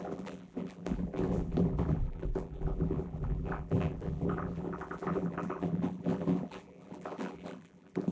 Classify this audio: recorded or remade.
remade